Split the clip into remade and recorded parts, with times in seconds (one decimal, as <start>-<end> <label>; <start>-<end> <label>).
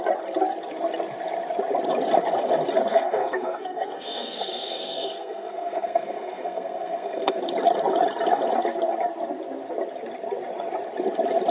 0.0-2.9 recorded; 2.9-7.4 remade; 7.4-11.5 recorded